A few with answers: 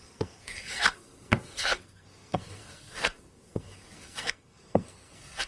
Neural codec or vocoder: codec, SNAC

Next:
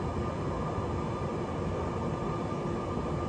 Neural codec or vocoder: none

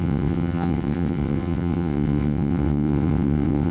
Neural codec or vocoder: vocoder, WaveNeXt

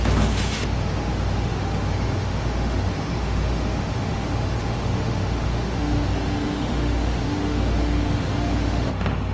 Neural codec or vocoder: autoencoder, DAC-VAE